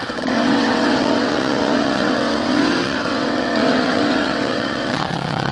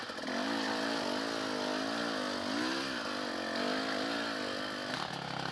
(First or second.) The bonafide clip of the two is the second